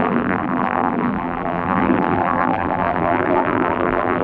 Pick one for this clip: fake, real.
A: fake